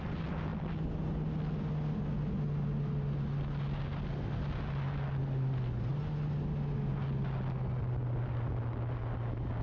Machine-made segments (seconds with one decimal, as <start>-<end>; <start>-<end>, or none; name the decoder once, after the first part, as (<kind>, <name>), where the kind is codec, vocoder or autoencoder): none